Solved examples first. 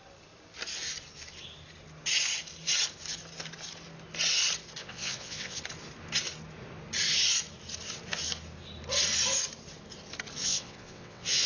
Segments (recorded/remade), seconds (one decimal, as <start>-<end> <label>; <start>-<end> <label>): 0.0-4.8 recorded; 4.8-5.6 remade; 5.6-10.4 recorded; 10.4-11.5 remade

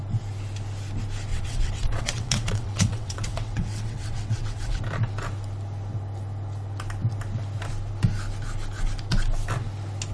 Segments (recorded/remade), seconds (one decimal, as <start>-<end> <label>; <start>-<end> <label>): 0.0-1.3 recorded; 1.3-4.8 remade; 4.8-10.1 recorded

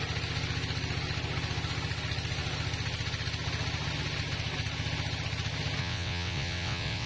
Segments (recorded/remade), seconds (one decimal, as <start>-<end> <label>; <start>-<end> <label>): 0.0-5.8 recorded; 5.8-7.1 remade

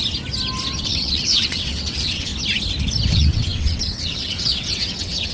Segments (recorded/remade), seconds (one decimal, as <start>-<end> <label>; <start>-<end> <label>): 0.0-0.8 recorded; 0.8-2.3 remade; 2.3-3.1 recorded; 3.1-5.3 remade